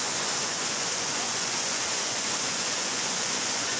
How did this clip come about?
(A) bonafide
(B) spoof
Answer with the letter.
B